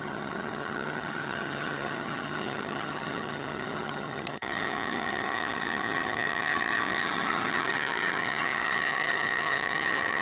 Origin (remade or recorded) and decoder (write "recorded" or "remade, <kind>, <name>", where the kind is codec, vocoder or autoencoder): remade, vocoder, HiFi-GAN